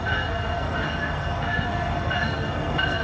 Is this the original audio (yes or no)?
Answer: no